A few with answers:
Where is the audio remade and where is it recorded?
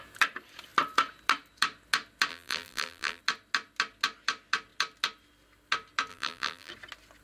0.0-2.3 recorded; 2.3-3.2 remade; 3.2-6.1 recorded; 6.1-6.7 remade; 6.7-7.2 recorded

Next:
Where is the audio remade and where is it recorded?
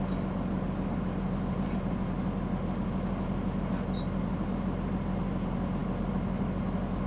0.0-7.1 recorded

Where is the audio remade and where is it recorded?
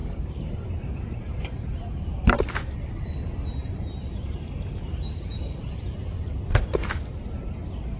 0.0-2.3 remade; 2.3-3.6 recorded; 3.6-6.9 remade; 6.9-8.0 recorded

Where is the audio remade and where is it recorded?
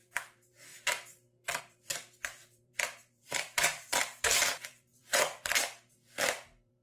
0.0-0.7 remade; 0.7-1.6 recorded; 1.6-6.8 remade